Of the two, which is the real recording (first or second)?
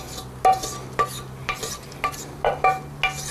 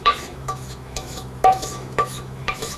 first